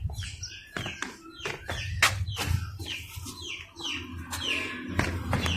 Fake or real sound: real